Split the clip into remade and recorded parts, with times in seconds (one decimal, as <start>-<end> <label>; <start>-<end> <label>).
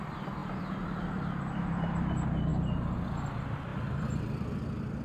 0.0-0.4 recorded; 0.4-1.4 remade; 1.4-3.7 recorded; 3.7-4.3 remade; 4.3-5.0 recorded